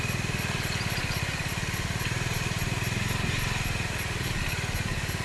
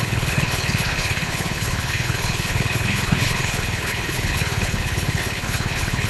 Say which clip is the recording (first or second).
first